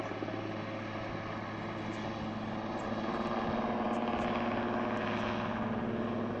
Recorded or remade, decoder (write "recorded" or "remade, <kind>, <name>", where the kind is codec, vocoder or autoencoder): recorded